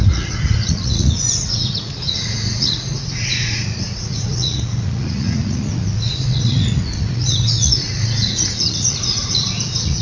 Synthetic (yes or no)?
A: yes